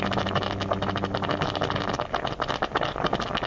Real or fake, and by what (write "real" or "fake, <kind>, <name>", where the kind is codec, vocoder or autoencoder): real